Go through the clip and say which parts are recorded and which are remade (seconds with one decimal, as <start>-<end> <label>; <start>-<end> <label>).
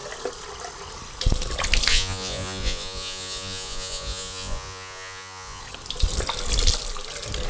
0.0-1.9 recorded; 1.9-5.6 remade; 5.6-7.5 recorded